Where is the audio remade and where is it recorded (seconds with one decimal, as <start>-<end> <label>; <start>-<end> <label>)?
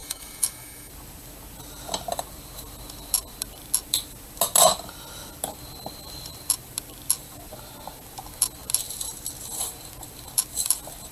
0.0-0.9 remade; 0.9-11.1 recorded